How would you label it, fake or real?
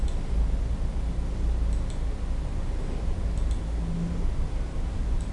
real